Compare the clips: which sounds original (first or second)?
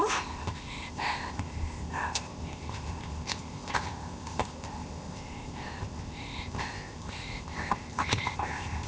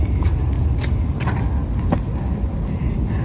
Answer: second